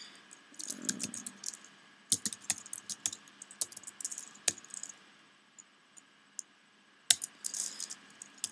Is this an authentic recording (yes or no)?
yes